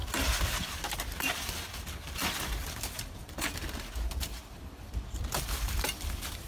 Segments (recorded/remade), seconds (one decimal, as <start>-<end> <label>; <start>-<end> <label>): 0.0-6.5 recorded